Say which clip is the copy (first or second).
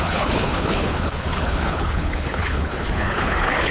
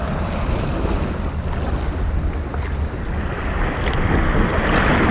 first